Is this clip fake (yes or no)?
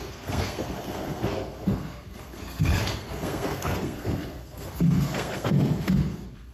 yes